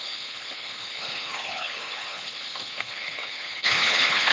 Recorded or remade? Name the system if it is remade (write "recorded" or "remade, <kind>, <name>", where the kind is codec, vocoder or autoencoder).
remade, codec, HILCodec